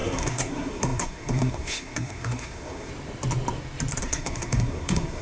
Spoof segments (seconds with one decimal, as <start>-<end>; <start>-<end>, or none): 0.0-2.9; 4.0-5.2